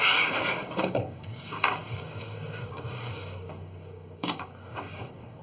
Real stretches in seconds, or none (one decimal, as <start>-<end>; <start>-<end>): none